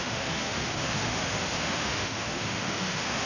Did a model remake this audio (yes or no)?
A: yes